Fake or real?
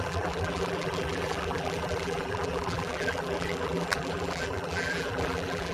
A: fake